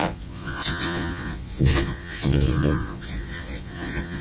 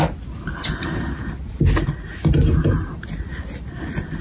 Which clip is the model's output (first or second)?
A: first